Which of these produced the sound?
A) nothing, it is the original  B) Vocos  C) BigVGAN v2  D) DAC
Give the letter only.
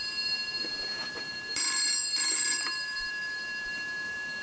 C